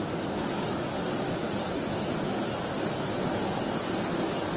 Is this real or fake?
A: real